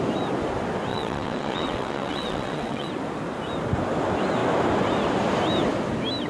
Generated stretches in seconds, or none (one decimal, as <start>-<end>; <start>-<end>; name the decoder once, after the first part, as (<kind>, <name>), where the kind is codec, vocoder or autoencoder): 0.9-2.9 (vocoder, WaveNeXt)